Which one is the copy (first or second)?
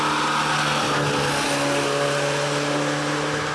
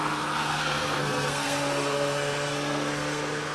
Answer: second